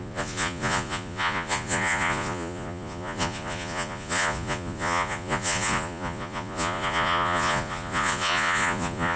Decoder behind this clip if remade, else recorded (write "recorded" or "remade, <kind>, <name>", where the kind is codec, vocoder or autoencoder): remade, vocoder, Vocos